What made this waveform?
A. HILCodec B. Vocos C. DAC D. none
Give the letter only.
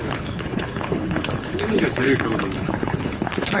A